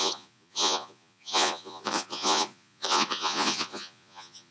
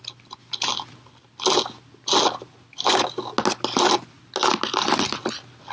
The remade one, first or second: first